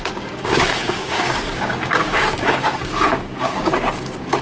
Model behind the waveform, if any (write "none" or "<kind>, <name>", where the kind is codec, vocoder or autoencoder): codec, DAC